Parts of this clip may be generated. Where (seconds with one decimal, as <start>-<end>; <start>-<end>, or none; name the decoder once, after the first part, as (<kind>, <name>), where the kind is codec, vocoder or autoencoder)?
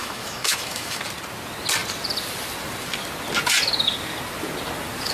0.0-1.0 (autoencoder, DAC-VAE)